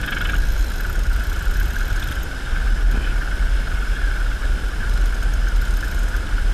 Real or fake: real